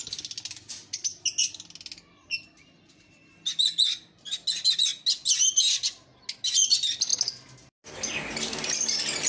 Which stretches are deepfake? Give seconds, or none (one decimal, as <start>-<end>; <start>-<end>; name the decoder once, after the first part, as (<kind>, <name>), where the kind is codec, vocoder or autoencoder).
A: none